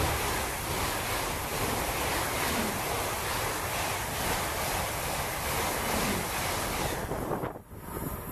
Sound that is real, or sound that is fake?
real